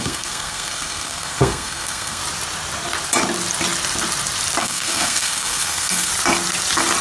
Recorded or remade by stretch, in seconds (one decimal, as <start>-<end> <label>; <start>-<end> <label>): 0.0-2.2 remade; 2.2-4.6 recorded; 4.6-6.1 remade; 6.1-7.0 recorded